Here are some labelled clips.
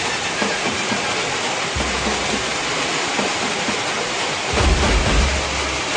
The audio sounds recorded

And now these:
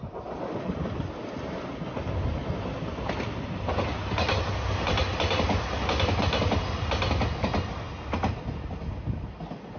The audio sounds recorded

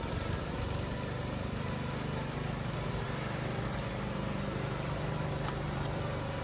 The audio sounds remade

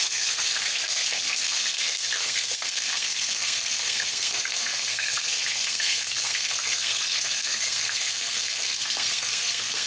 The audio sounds remade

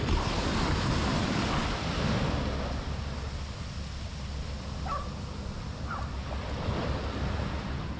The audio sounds recorded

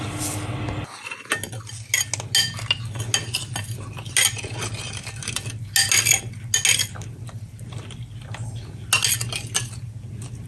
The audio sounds recorded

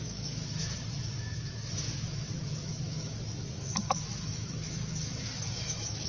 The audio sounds remade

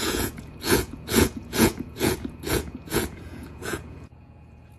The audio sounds remade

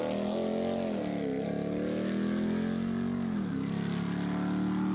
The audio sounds recorded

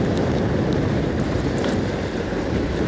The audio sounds remade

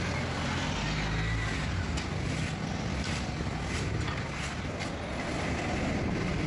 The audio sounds recorded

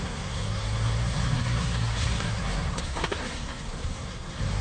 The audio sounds remade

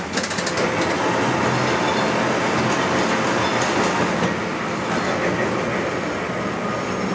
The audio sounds recorded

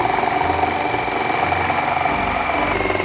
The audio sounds recorded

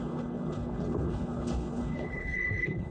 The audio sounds remade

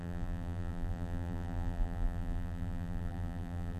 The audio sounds remade